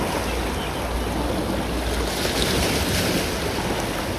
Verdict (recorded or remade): recorded